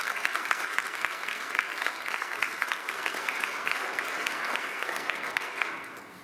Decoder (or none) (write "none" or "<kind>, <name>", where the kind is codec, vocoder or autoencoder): codec, SNAC